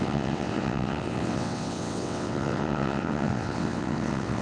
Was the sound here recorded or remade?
remade